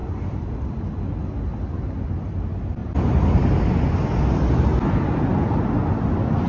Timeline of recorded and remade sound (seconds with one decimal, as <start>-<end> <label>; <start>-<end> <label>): 0.0-6.5 recorded